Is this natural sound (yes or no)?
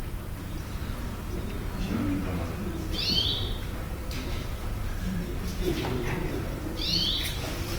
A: no